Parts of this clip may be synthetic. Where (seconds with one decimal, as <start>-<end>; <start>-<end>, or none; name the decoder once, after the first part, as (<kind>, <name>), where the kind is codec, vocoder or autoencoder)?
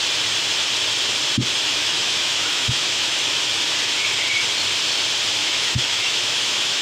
1.8-3.3 (autoencoder, DAC-VAE); 5.4-6.8